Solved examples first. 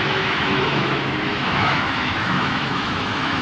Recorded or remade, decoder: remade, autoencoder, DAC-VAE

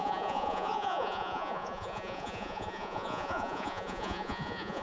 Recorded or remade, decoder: remade, vocoder, Vocos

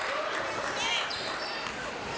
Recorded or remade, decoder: recorded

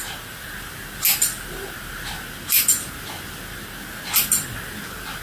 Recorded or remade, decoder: recorded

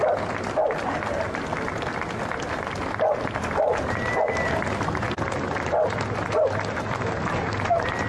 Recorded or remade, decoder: recorded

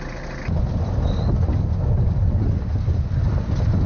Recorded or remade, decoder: recorded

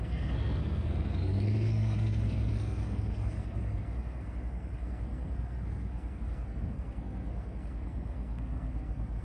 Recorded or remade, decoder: remade, codec, SNAC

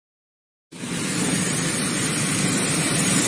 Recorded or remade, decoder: recorded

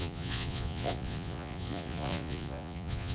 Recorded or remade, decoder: remade, vocoder, Vocos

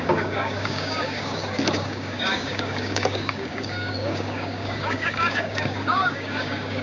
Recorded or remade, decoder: remade, codec, DAC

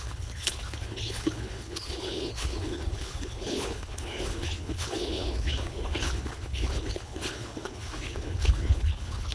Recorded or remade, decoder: remade, codec, HILCodec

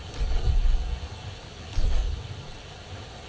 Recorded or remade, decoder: recorded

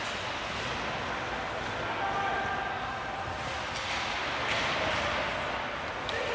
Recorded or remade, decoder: recorded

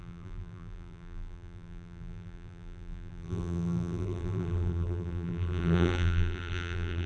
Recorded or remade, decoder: remade, vocoder, BigVGAN v2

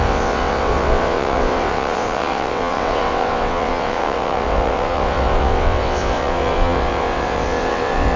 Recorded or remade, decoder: remade, vocoder, WaveNeXt